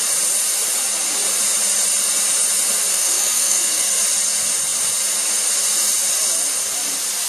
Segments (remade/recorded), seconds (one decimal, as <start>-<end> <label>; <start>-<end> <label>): 0.0-2.9 recorded; 2.9-4.0 remade; 4.0-7.3 recorded